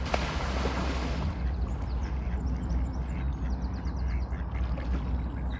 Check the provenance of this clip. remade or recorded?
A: recorded